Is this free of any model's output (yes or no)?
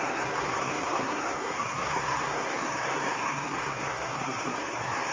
no